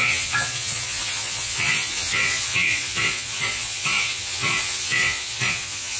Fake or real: fake